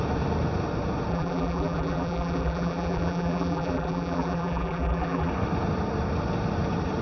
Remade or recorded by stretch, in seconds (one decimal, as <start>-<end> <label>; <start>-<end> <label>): 0.0-1.1 recorded; 1.1-5.3 remade; 5.3-7.0 recorded